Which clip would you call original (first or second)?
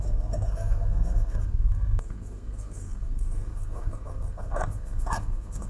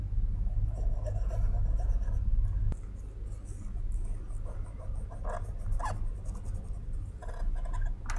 second